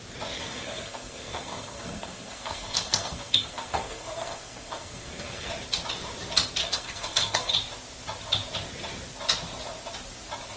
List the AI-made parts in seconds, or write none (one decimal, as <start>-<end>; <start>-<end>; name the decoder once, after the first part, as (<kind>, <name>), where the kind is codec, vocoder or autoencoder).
0.4-5.5 (codec, SNAC); 6.6-7.5